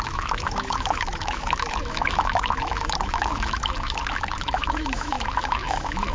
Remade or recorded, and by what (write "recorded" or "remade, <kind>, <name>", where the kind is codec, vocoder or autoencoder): remade, autoencoder, DAC-VAE